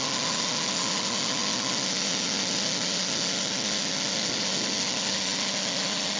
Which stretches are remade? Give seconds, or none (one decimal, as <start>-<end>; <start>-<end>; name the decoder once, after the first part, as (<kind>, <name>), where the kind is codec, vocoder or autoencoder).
none